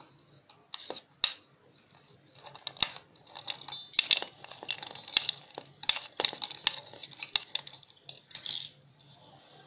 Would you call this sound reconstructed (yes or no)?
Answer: no